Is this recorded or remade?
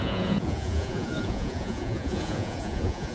remade